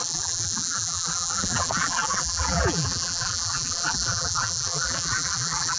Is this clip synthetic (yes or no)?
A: yes